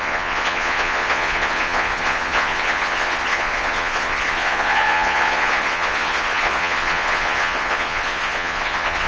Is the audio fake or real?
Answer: fake